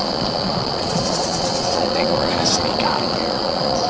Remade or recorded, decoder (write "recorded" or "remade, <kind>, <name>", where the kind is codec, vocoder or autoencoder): remade, vocoder, Vocos